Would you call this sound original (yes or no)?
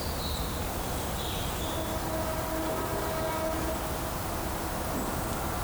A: yes